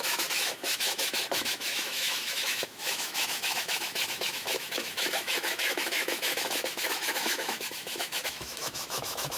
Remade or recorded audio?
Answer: remade